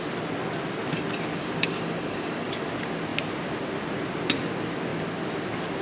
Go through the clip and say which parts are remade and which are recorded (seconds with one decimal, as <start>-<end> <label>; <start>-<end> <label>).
0.0-1.3 recorded; 1.3-2.7 remade; 2.7-5.8 recorded